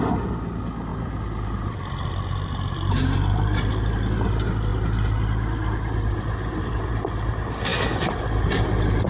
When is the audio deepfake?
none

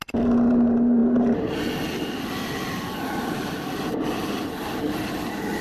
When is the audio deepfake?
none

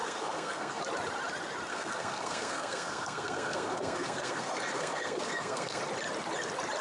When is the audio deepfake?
0.0-0.8 (codec, SNAC); 1.7-5.8